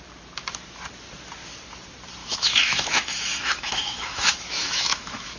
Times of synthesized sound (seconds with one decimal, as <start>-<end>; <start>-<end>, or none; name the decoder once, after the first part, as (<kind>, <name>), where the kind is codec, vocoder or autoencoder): 2.2-5.4 (autoencoder, DAC-VAE)

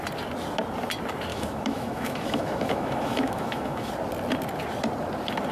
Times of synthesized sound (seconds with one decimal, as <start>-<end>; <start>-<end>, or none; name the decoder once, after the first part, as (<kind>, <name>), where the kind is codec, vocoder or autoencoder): 1.3-3.9 (autoencoder, DAC-VAE)

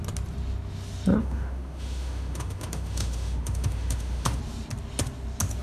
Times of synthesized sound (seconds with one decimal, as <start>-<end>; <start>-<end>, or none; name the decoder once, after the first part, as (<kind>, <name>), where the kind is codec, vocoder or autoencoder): 1.2-4.4 (autoencoder, DAC-VAE)

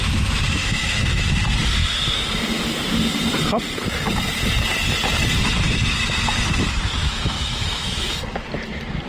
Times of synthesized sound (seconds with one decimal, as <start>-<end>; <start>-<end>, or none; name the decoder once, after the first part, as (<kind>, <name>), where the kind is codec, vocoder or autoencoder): 0.6-1.2 (autoencoder, DAC-VAE); 7.0-8.1

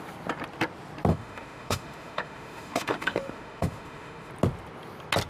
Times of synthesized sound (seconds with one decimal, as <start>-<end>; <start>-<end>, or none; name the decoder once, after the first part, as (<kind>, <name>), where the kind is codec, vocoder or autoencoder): 1.1-4.3 (autoencoder, DAC-VAE)

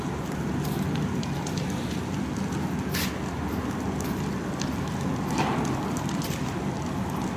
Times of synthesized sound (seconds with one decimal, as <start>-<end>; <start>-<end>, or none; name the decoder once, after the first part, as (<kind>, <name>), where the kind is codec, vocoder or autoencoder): none

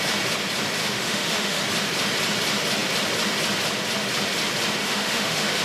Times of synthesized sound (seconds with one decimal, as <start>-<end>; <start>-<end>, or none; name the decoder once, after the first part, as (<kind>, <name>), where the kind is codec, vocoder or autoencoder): 0.8-1.6 (autoencoder, DAC-VAE); 4.8-5.6